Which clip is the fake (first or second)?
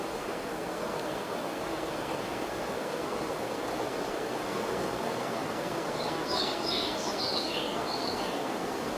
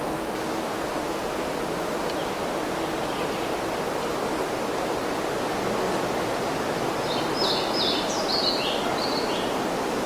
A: first